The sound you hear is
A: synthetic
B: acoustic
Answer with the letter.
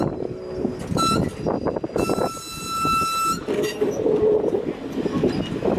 B